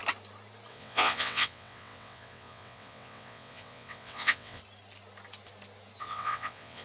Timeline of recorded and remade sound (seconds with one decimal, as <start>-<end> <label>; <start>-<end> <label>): 0.0-0.7 recorded; 0.7-4.6 remade; 4.6-6.0 recorded; 6.0-6.8 remade

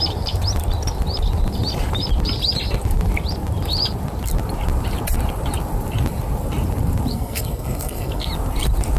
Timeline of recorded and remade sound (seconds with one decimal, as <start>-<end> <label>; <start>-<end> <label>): 0.0-7.1 recorded; 7.1-8.3 remade; 8.3-9.0 recorded

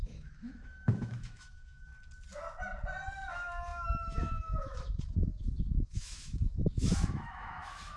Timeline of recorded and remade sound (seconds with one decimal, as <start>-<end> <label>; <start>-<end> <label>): 0.0-1.9 remade; 1.9-3.3 recorded; 3.3-8.0 remade

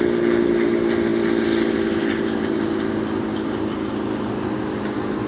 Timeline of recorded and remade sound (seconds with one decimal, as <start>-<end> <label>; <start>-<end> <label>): 0.0-5.3 recorded

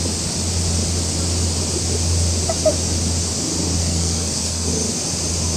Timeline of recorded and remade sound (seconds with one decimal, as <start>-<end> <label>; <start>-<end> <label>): 0.0-3.8 recorded; 3.8-4.7 remade; 4.7-5.6 recorded